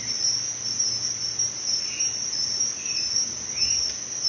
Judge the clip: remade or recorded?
recorded